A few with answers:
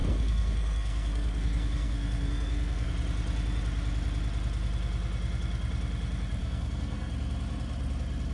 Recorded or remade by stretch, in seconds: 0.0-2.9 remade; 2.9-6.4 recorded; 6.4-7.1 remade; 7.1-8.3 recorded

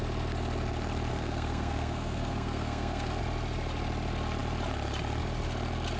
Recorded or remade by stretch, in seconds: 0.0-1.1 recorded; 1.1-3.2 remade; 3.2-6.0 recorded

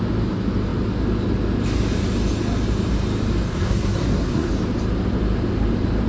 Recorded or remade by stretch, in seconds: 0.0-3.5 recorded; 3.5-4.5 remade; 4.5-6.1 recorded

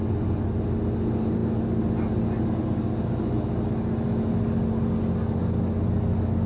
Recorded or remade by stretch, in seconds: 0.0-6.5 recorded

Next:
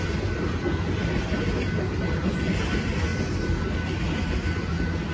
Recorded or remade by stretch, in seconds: 0.0-5.1 recorded

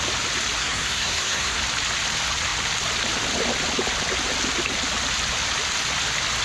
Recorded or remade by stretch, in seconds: 0.0-0.6 recorded; 0.6-1.6 remade; 1.6-6.4 recorded